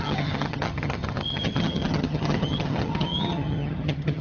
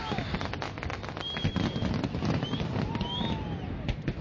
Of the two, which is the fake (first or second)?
first